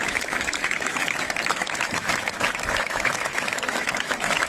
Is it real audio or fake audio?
fake